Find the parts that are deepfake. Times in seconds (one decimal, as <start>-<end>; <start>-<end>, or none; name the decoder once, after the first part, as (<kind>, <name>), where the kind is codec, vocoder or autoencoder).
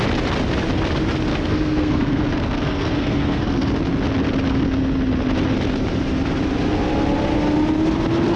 1.3-3.7 (codec, SNAC)